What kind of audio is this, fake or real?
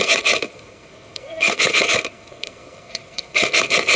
fake